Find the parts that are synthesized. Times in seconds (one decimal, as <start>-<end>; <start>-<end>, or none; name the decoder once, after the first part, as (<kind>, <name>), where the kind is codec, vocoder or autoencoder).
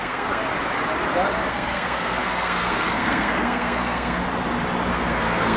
0.0-0.4 (codec, SNAC); 1.5-4.2; 4.9-5.6